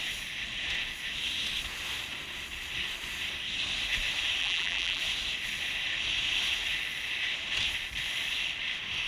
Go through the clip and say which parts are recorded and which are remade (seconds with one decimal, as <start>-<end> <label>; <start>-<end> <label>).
0.0-4.4 recorded; 4.4-5.0 remade; 5.0-9.1 recorded